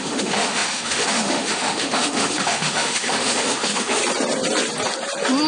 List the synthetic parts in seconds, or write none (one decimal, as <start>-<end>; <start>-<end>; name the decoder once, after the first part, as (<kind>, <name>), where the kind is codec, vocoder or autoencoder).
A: 0.0-4.0 (autoencoder, DAC-VAE)